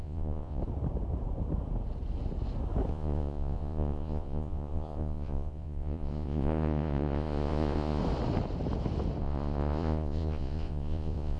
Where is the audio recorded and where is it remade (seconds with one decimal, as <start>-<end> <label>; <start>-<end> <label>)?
0.0-0.6 remade; 0.6-2.9 recorded; 2.9-8.0 remade; 8.0-9.2 recorded; 9.2-11.4 remade